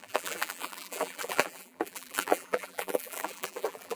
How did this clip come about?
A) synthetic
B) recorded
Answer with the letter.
A